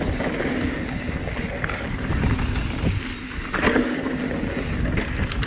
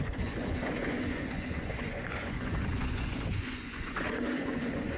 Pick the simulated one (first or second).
second